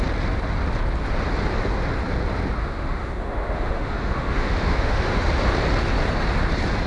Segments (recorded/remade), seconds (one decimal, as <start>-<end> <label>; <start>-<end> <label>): 0.0-2.6 recorded; 2.6-5.3 remade; 5.3-6.9 recorded